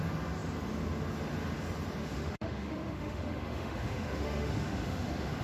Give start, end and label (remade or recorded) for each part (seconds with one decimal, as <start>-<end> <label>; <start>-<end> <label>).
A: 0.0-2.0 recorded; 2.0-5.4 remade